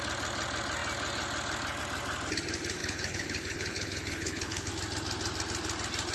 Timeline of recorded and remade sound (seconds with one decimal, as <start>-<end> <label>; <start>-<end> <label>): 0.0-2.8 recorded; 2.8-4.7 remade; 4.7-6.1 recorded